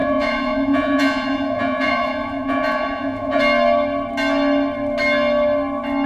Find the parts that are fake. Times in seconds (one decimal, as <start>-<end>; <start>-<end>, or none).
0.0-3.4